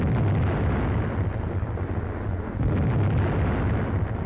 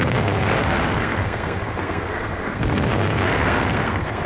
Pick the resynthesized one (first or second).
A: second